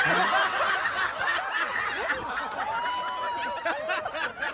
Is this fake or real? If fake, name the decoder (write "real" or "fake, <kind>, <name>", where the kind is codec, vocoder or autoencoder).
real